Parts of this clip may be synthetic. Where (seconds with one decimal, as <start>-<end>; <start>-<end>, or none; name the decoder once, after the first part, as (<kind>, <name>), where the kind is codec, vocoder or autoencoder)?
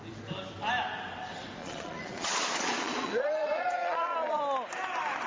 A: 1.6-4.4 (vocoder, Vocos)